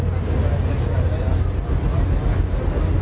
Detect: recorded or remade recorded